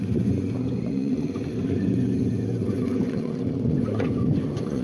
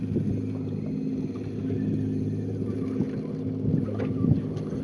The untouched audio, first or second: second